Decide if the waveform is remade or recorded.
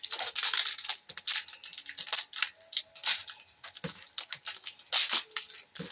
recorded